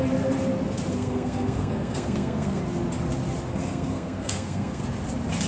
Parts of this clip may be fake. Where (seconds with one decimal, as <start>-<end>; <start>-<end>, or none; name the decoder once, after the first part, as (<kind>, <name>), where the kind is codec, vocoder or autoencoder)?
0.9-2.6 (codec, SNAC); 3.5-4.8